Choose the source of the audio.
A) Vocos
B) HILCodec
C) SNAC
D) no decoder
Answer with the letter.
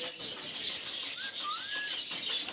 D